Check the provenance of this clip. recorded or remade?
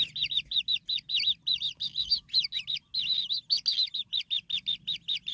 recorded